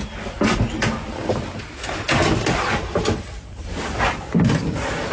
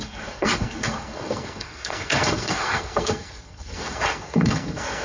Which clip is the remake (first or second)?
second